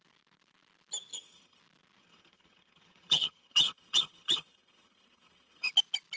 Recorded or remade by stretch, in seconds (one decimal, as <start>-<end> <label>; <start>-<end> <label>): 0.0-1.1 recorded; 1.1-1.6 remade; 1.6-2.0 recorded; 2.0-5.7 remade; 5.7-6.2 recorded